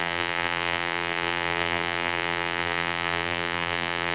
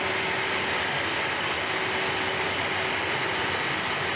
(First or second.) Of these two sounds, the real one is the second